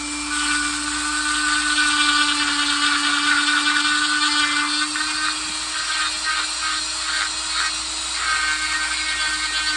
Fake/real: real